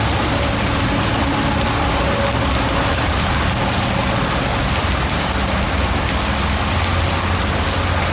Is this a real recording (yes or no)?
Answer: yes